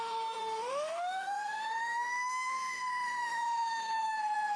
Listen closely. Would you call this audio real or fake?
fake